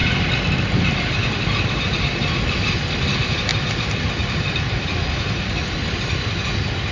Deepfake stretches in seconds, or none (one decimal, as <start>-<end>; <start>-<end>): 0.0-1.7; 3.5-5.6